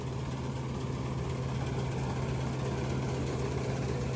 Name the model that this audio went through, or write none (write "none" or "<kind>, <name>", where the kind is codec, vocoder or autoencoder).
none